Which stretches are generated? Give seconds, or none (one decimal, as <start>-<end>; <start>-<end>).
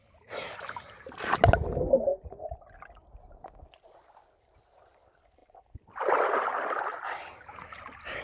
none